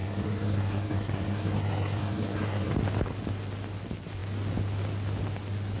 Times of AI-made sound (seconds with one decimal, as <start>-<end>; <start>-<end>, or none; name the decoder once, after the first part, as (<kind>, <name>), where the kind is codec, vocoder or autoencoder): 0.0-2.7 (codec, SNAC)